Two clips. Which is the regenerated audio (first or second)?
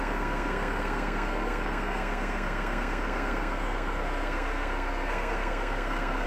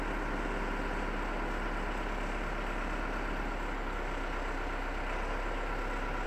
first